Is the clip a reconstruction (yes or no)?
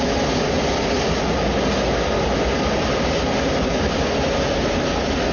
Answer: no